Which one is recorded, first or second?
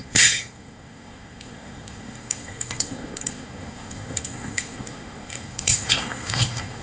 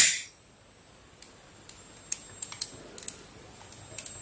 second